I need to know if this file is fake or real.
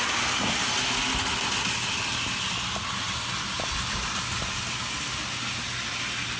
real